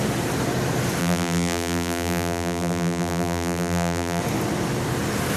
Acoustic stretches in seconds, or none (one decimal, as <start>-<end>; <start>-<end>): 0.0-1.0; 4.2-5.4

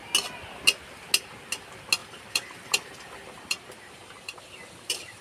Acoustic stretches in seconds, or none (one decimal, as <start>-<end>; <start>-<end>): 0.0-2.0

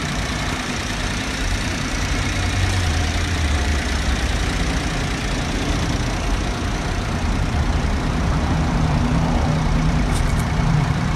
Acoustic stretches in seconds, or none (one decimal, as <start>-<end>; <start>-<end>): 3.7-6.9